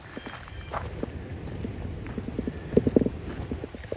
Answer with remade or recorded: recorded